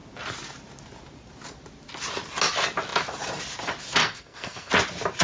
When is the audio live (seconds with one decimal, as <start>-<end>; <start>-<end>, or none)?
0.0-4.0; 4.7-5.2